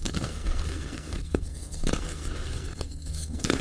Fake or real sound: fake